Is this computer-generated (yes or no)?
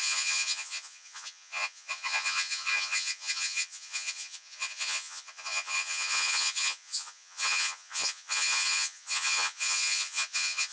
yes